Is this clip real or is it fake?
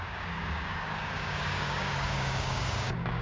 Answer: fake